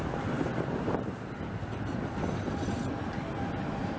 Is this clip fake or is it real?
real